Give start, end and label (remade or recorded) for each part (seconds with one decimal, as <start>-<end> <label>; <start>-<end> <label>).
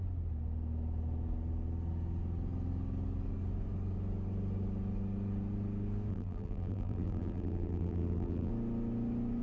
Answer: 0.0-6.1 recorded; 6.1-8.5 remade; 8.5-9.4 recorded